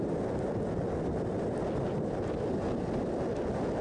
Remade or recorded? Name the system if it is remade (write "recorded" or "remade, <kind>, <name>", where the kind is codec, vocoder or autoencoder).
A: recorded